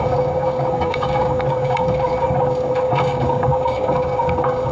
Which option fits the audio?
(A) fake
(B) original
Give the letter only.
A